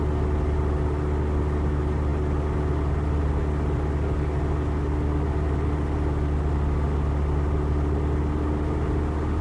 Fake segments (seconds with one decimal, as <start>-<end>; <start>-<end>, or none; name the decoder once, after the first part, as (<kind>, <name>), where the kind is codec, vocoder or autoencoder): none